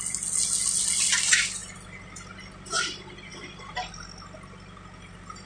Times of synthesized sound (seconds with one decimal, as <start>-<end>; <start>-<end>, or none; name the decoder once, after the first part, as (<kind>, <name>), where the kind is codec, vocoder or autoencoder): none